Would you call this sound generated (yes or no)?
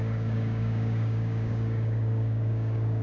yes